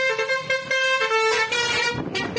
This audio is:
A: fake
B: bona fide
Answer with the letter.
B